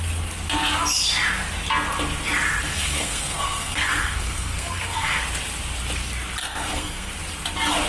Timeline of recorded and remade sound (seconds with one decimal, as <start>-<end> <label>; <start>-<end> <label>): 0.0-2.7 recorded; 2.7-5.2 remade; 5.2-6.4 recorded; 6.4-7.1 remade; 7.1-7.9 recorded